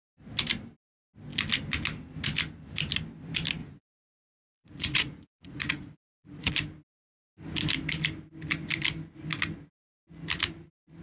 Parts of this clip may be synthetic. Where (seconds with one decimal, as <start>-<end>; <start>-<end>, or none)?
3.6-6.5